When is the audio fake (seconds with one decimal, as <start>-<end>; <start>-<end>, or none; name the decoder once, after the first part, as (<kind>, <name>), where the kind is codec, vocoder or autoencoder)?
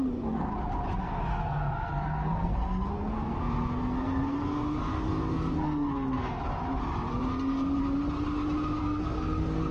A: 0.0-0.5 (codec, SNAC); 1.0-6.4; 7.2-7.8; 8.8-9.7